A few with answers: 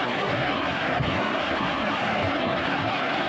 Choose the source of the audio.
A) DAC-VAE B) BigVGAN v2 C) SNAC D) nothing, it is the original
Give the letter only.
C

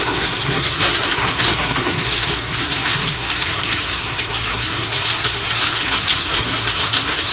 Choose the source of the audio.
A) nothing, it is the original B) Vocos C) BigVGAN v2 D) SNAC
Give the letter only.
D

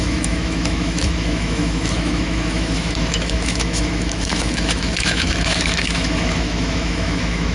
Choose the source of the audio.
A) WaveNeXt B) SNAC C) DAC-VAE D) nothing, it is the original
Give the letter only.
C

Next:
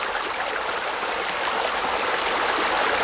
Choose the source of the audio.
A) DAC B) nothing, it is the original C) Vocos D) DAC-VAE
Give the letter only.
B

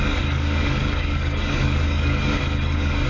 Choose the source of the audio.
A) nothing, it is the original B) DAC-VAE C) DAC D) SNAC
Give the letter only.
C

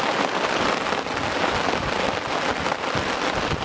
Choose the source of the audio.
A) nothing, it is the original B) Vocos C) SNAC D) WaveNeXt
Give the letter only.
A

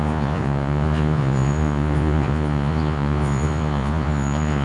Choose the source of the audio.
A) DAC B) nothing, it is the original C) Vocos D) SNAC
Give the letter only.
C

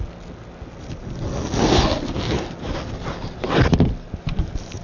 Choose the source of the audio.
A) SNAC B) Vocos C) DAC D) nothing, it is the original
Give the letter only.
D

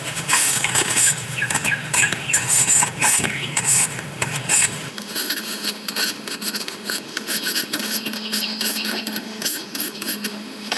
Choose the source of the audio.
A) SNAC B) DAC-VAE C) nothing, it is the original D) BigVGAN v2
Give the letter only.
B